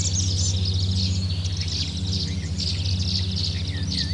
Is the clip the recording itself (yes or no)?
yes